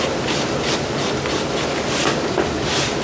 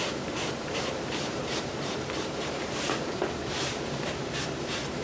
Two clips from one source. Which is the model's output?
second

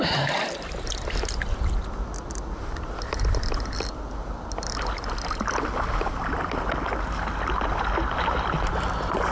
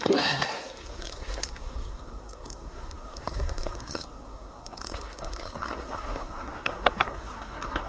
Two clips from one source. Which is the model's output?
second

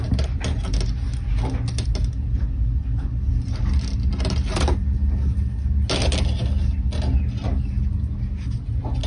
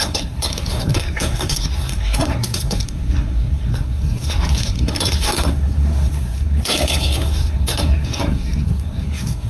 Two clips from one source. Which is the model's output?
second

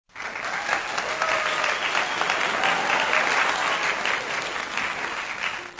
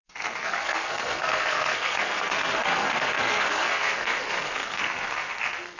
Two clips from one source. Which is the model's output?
second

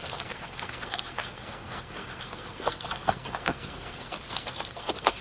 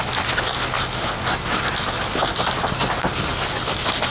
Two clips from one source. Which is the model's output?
first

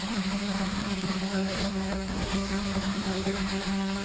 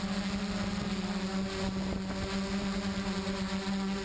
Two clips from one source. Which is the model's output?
first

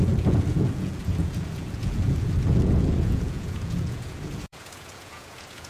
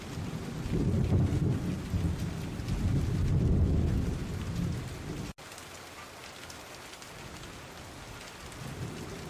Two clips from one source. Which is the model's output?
first